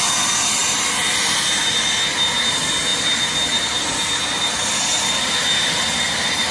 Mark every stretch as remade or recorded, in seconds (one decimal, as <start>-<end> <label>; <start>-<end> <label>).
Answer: 0.0-6.5 recorded